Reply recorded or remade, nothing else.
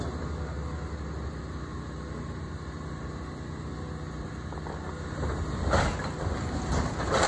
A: recorded